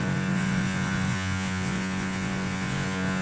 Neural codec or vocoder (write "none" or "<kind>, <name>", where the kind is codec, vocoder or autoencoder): vocoder, Vocos